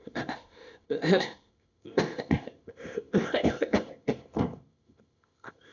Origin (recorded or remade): remade